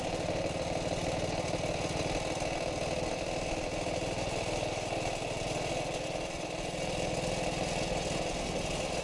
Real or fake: real